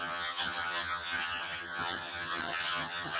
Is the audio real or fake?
fake